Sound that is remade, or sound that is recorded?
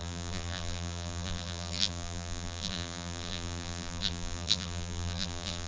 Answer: remade